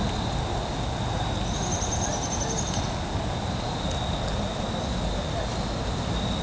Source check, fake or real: real